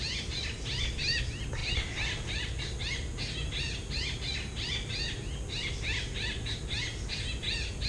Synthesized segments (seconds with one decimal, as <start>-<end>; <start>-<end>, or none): none